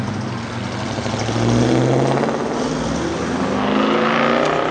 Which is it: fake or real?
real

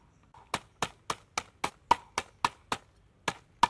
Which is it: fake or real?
real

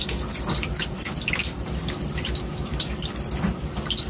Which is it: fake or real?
real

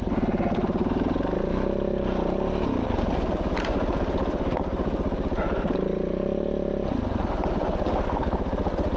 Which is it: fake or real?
real